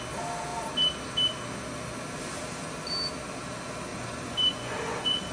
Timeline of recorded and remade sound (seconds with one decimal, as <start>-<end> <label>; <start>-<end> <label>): 0.0-3.9 recorded; 3.9-5.3 remade

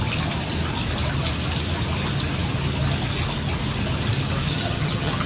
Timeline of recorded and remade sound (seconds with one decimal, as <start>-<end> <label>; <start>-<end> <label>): 0.0-4.5 recorded; 4.5-5.3 remade

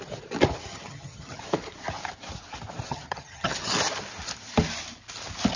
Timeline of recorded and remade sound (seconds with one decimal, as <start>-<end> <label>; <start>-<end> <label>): 0.0-0.7 recorded; 0.7-1.4 remade; 1.4-2.9 recorded; 2.9-3.7 remade; 3.7-5.6 recorded

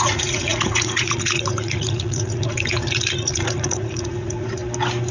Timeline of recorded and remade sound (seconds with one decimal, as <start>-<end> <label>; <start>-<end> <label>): 0.0-4.6 remade; 4.6-5.1 recorded

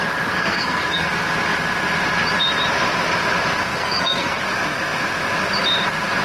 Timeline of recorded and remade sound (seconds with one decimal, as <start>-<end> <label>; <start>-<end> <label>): 0.0-1.1 remade; 1.1-3.7 recorded; 3.7-4.4 remade; 4.4-6.2 recorded

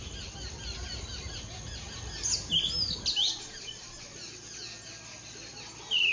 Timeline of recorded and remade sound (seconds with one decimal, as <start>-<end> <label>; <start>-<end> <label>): 0.0-6.1 recorded

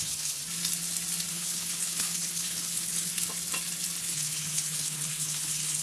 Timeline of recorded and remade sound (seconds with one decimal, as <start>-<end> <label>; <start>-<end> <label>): 0.0-0.4 remade; 0.4-1.3 recorded; 1.3-3.1 remade; 3.1-4.0 recorded; 4.0-5.8 remade

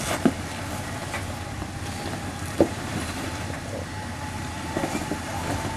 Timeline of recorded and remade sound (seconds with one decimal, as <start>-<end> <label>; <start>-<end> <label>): 0.0-1.0 recorded; 1.0-4.5 remade; 4.5-5.0 recorded; 5.0-5.8 remade